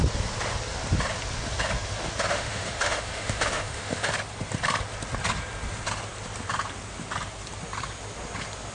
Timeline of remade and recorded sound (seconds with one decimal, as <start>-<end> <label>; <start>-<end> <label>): 0.0-2.3 recorded; 2.3-4.1 remade; 4.1-8.7 recorded